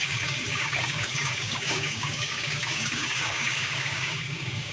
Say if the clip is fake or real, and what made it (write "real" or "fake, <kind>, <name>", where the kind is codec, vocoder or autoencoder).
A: fake, codec, DAC